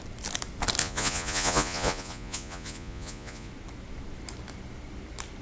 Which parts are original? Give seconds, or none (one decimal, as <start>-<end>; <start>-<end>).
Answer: 0.0-0.8; 3.5-5.4

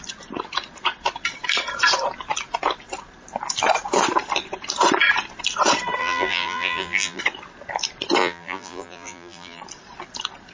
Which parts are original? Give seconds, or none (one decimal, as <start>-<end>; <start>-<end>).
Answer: 0.0-6.0; 7.2-8.2; 9.6-10.5

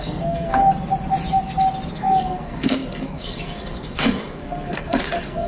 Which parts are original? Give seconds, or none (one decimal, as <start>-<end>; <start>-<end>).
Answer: 0.6-1.9

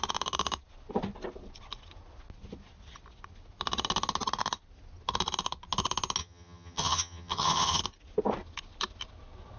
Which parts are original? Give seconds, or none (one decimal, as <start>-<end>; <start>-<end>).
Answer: 0.0-6.2; 7.8-9.6

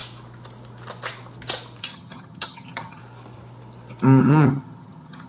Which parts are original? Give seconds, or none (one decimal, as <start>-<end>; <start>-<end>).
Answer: 0.0-1.8; 3.0-4.2